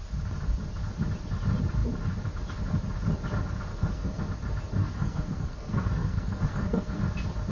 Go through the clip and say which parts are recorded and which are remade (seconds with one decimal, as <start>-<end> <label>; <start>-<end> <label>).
0.0-3.7 recorded; 3.7-4.2 remade; 4.2-4.8 recorded; 4.8-7.0 remade; 7.0-7.5 recorded

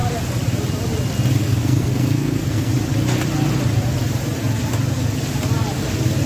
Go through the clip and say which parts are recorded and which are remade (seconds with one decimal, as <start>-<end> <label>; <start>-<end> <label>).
0.0-1.4 recorded; 1.4-2.7 remade; 2.7-6.3 recorded

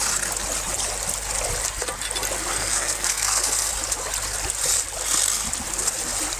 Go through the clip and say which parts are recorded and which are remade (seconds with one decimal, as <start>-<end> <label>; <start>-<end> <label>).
0.0-2.5 recorded; 2.5-3.7 remade; 3.7-6.4 recorded

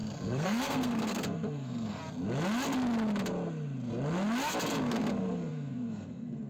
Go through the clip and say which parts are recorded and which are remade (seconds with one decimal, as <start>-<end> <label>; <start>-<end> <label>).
0.0-2.0 remade; 2.0-4.8 recorded; 4.8-6.5 remade

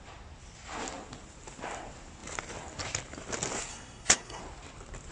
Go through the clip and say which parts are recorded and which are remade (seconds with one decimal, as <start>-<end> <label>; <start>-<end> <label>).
0.0-3.7 recorded; 3.7-4.4 remade; 4.4-5.1 recorded

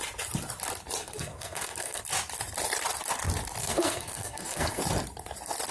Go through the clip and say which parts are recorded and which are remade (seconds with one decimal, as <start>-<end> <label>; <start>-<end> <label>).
0.0-1.0 recorded; 1.0-2.0 remade; 2.0-3.6 recorded; 3.6-4.8 remade; 4.8-5.7 recorded

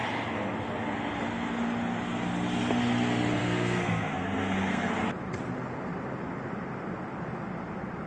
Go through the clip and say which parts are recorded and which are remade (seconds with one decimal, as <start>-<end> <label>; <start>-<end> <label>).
0.0-3.4 recorded; 3.4-4.9 remade; 4.9-8.1 recorded